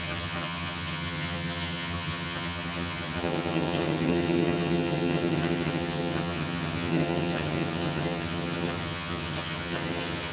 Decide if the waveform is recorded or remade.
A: remade